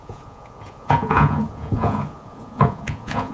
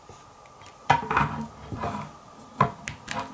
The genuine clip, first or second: second